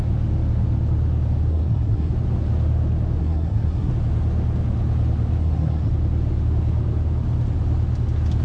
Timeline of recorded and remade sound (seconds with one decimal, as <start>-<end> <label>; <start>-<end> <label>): 0.0-1.5 recorded; 1.5-2.1 remade; 2.1-3.2 recorded; 3.2-3.9 remade; 3.9-5.4 recorded; 5.4-5.9 remade; 5.9-8.4 recorded